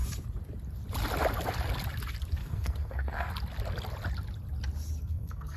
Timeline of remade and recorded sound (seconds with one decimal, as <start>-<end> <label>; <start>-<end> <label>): 0.0-2.4 recorded; 2.4-3.3 remade; 3.3-5.0 recorded; 5.0-5.6 remade